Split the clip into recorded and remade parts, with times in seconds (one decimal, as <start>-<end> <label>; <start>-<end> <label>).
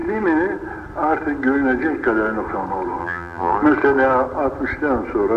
0.0-3.0 recorded; 3.0-3.5 remade; 3.5-5.4 recorded